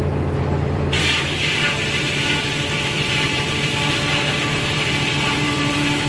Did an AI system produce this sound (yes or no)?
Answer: yes